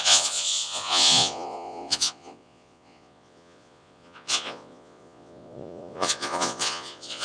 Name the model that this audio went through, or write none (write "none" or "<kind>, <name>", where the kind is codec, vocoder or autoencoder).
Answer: vocoder, Vocos